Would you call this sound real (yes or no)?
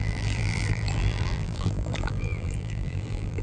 no